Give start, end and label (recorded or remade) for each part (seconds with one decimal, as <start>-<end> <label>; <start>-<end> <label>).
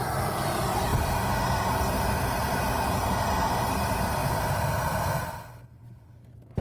0.0-6.6 recorded